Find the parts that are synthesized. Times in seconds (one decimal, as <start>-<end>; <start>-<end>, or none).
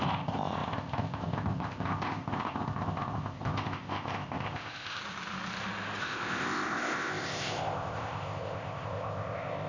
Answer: 0.0-5.0; 6.0-9.7